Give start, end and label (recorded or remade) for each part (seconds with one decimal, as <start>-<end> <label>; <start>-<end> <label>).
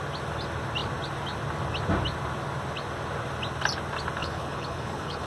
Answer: 0.0-4.2 recorded; 4.2-5.3 remade